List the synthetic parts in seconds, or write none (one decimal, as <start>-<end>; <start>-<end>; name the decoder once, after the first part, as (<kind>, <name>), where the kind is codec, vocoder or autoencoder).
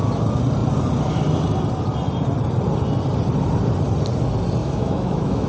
4.6-5.5 (autoencoder, DAC-VAE)